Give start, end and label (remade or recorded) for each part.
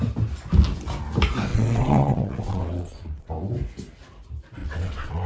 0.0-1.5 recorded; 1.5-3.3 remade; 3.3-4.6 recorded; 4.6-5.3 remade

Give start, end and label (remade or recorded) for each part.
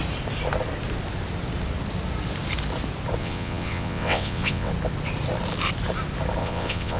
0.0-3.2 recorded; 3.2-4.7 remade; 4.7-6.4 recorded; 6.4-7.0 remade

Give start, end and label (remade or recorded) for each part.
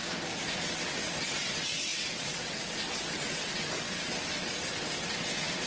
0.0-0.6 recorded; 0.6-5.7 remade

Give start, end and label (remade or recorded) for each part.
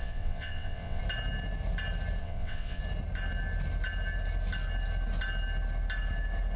0.0-1.0 remade; 1.0-2.2 recorded; 2.2-2.8 remade; 2.8-6.6 recorded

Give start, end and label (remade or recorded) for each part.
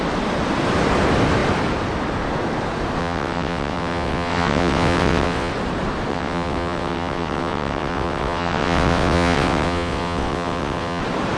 0.0-3.0 recorded; 3.0-5.5 remade; 5.5-6.1 recorded; 6.1-11.0 remade; 11.0-11.4 recorded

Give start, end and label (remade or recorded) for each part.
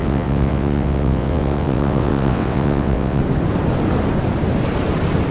0.0-3.2 remade; 3.2-5.3 recorded